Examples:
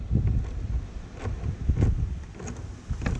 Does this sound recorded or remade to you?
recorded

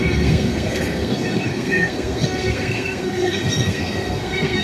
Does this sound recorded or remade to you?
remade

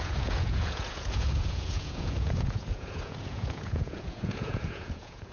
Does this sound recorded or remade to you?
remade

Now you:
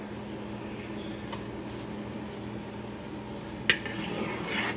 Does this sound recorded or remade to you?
recorded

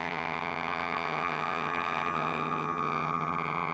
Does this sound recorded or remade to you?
remade